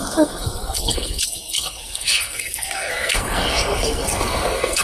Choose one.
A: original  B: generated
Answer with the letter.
B